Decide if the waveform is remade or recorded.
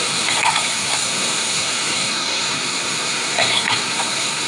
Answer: remade